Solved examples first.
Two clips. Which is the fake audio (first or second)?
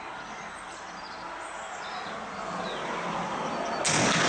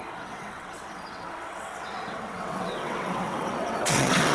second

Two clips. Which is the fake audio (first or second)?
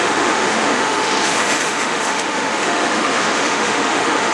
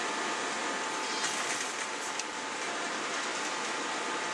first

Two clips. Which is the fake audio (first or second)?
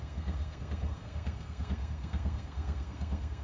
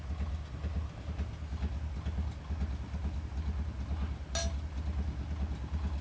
first